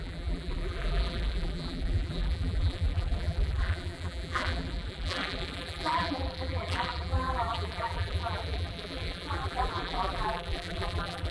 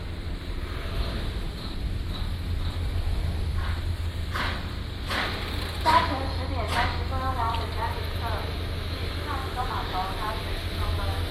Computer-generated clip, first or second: first